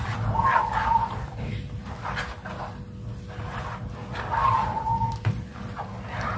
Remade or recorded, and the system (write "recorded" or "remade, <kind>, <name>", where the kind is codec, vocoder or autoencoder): recorded